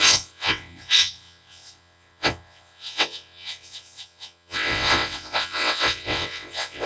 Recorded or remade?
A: remade